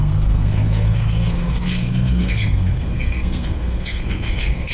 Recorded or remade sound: remade